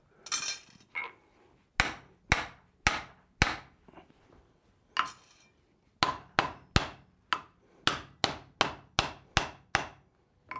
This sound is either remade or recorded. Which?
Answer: recorded